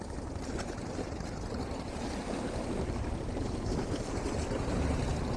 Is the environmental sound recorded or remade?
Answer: recorded